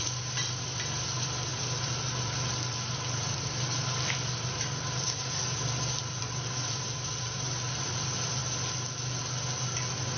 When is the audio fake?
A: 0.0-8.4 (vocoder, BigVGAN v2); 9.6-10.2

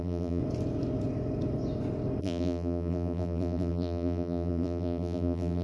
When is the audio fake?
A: 0.0-0.4 (vocoder, BigVGAN v2); 2.2-5.6

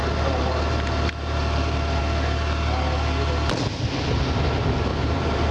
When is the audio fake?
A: 0.0-2.0 (vocoder, BigVGAN v2); 4.9-5.5